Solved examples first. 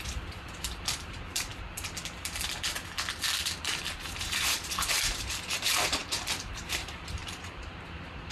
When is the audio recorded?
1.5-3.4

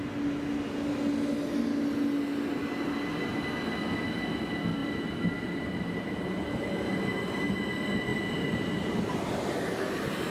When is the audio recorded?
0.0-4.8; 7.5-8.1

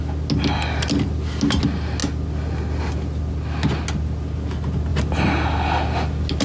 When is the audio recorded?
0.0-6.4

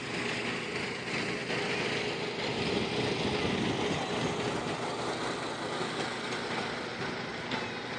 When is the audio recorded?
0.0-6.9; 7.5-8.0

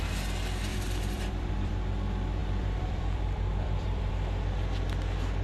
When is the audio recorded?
0.0-0.7; 1.7-2.4; 4.1-5.4

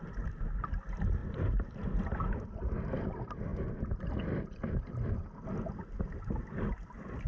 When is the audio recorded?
0.0-1.2; 2.2-3.5

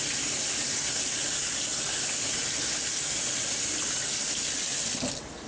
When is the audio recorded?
0.0-5.5